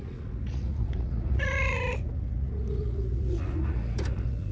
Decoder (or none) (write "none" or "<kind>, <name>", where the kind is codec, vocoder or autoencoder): vocoder, Vocos